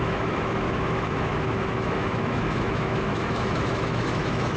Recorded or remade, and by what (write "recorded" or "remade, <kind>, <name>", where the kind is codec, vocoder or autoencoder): remade, autoencoder, DAC-VAE